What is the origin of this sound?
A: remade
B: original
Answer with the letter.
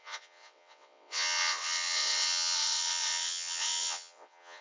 A